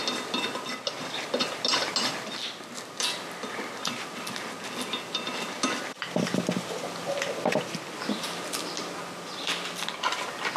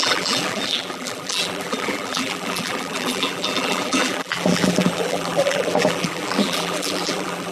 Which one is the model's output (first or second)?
second